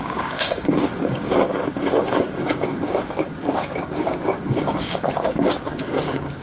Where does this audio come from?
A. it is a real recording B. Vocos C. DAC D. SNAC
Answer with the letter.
C